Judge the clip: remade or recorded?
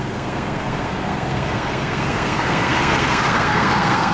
remade